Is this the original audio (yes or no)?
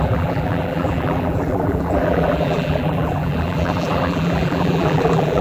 no